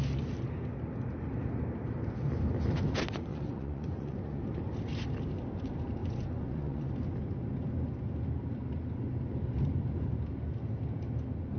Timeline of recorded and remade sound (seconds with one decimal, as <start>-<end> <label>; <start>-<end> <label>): 0.0-3.3 recorded; 3.3-4.4 remade; 4.4-6.0 recorded; 6.0-6.9 remade; 6.9-11.6 recorded

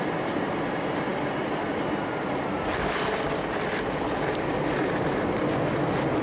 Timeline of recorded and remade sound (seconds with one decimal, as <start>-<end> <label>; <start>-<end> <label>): 0.0-6.2 recorded

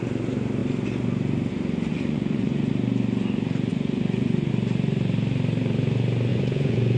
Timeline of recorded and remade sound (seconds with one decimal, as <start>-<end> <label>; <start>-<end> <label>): 0.0-1.9 recorded; 1.9-2.7 remade; 2.7-3.7 recorded; 3.7-4.5 remade; 4.5-6.3 recorded; 6.3-7.0 remade

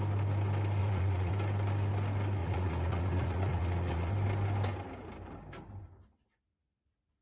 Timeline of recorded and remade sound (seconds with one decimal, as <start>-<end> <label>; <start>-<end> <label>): 0.0-0.8 recorded; 0.8-1.3 remade; 1.3-2.4 recorded; 2.4-4.1 remade; 4.1-7.2 recorded